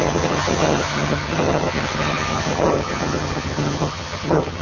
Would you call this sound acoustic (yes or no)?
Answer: no